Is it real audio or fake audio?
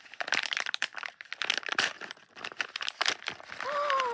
real